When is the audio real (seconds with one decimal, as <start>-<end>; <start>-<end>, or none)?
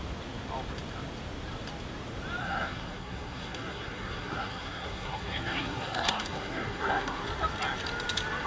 0.0-2.4; 7.2-8.5